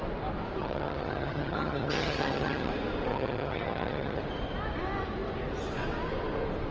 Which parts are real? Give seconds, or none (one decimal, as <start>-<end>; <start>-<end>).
0.0-0.6; 2.7-3.1; 4.2-6.7